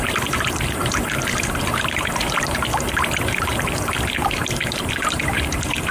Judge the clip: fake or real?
fake